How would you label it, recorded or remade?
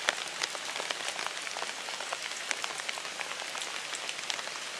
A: recorded